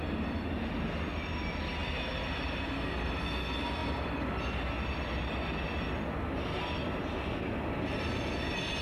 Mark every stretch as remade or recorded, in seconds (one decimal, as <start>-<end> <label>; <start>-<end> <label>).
0.0-8.8 recorded